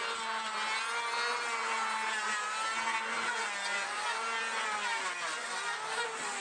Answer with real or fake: real